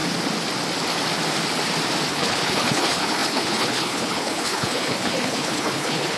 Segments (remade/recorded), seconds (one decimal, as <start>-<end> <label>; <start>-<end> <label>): 0.0-2.1 recorded; 2.1-6.2 remade